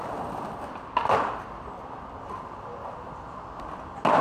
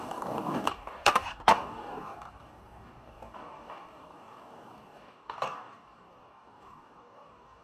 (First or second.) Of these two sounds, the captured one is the first